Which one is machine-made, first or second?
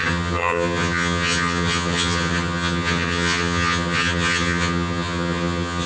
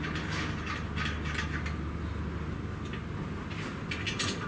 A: first